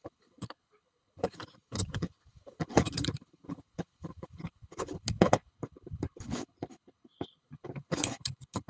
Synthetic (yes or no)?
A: yes